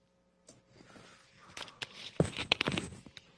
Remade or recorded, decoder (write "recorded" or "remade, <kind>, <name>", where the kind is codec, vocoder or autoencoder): recorded